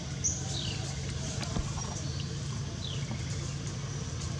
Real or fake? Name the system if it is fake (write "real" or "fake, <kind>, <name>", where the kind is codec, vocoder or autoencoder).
real